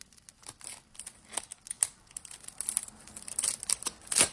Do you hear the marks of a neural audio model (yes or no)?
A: no